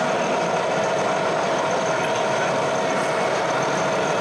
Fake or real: real